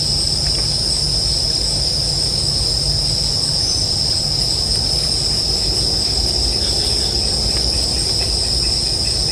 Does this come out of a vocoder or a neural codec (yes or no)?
no